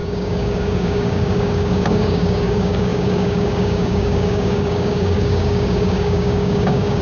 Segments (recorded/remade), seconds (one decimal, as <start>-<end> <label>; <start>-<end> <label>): 0.0-7.0 remade